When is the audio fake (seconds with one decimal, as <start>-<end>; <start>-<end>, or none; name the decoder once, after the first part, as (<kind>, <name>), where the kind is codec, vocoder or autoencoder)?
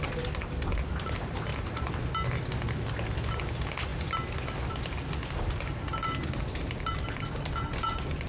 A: none